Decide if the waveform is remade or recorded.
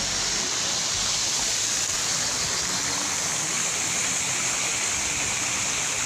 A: recorded